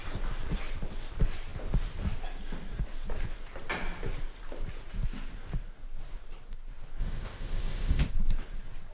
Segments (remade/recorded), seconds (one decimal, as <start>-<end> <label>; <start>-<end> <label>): 0.0-7.0 recorded; 7.0-8.1 remade; 8.1-8.9 recorded